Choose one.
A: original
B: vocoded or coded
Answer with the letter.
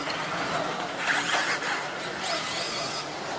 A